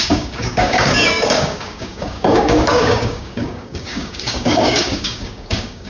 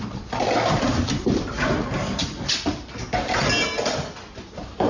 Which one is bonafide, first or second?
second